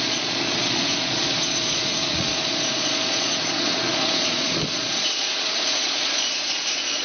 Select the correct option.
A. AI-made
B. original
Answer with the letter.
A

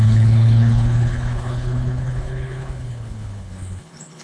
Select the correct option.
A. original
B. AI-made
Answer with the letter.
B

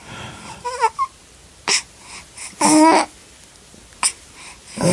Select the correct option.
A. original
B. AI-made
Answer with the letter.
A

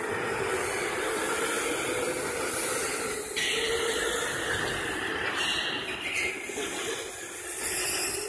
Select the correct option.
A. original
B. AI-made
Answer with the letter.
A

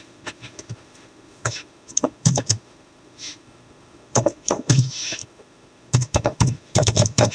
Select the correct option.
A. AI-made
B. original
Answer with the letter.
A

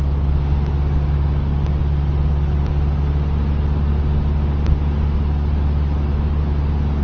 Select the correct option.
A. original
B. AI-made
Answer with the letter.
A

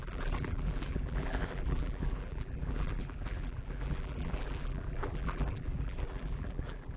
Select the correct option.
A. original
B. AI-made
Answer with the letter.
B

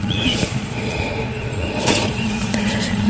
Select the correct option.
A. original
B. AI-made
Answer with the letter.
B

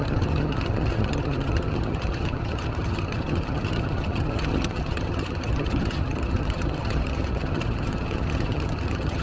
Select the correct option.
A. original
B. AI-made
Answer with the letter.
B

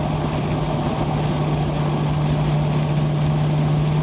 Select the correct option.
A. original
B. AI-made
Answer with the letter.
A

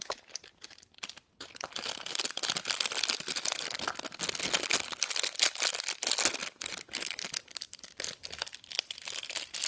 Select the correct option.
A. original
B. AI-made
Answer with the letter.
A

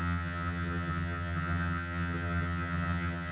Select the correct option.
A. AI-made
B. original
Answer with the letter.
A